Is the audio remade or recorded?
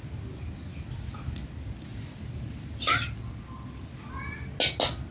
recorded